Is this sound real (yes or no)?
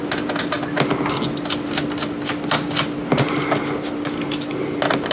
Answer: yes